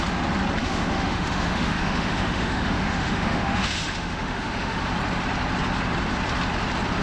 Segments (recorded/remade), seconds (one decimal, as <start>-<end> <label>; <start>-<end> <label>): 0.0-0.6 recorded; 0.6-4.8 remade; 4.8-7.0 recorded